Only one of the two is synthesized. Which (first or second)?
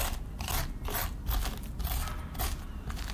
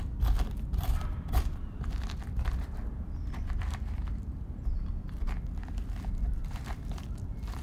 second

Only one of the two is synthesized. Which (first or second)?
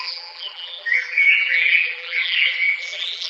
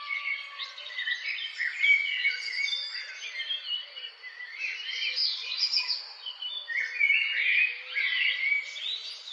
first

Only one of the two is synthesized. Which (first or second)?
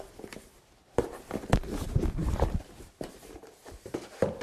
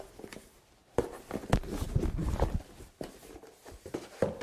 first